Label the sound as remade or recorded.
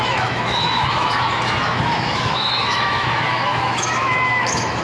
remade